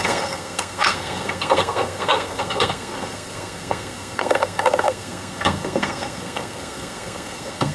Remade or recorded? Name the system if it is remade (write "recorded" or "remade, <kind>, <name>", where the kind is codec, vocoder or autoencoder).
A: remade, codec, SNAC